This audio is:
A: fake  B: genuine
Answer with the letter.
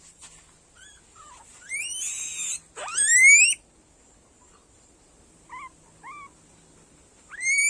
B